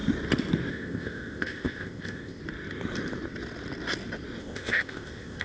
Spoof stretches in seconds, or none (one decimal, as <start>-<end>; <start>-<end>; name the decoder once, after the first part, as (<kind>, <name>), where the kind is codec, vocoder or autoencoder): 0.7-2.4 (codec, ZipCodec); 4.4-5.4